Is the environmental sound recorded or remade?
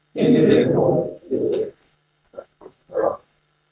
remade